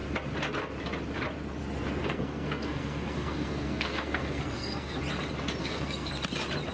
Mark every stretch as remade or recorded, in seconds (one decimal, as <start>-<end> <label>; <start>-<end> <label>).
0.0-2.0 recorded; 2.0-5.0 remade; 5.0-5.6 recorded; 5.6-6.1 remade; 6.1-6.7 recorded